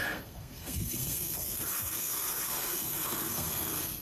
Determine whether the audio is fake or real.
fake